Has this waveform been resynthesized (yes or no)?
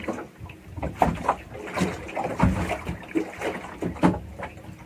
no